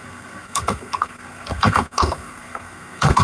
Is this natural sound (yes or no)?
no